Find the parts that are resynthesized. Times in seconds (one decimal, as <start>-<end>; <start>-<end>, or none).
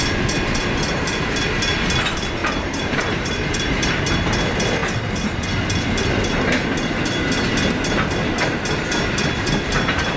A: 2.4-3.9